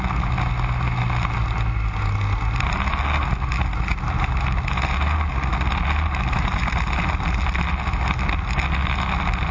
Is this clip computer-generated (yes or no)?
no